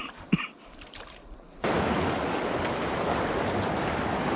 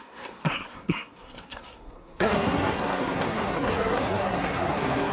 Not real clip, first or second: second